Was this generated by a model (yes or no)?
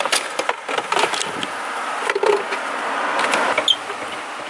no